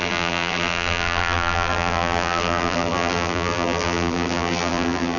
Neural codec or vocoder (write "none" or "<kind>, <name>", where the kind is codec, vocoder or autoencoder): vocoder, BigVGAN v2